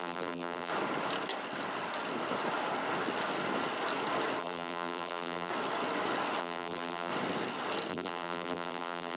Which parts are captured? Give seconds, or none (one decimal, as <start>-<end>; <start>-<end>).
0.7-4.4; 5.5-6.4; 7.1-7.9